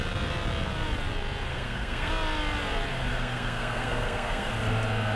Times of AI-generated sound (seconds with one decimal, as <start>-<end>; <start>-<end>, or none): 1.5-2.1; 3.1-4.5